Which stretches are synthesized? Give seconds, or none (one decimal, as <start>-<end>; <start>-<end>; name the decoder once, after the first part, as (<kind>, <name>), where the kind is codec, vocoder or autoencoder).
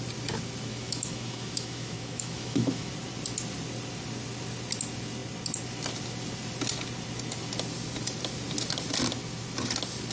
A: 0.7-2.9 (autoencoder, DAC-VAE)